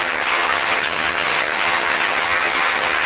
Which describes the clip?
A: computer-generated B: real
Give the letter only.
A